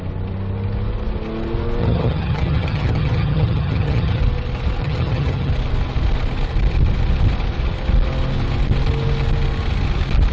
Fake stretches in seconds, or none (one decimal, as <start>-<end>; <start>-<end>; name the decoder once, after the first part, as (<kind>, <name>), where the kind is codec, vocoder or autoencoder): 1.8-4.2 (vocoder, HiFi-GAN); 4.8-5.5